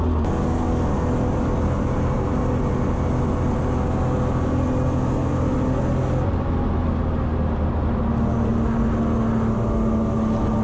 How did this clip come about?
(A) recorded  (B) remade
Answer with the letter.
A